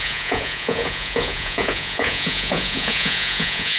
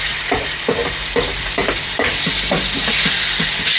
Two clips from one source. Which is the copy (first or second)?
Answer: first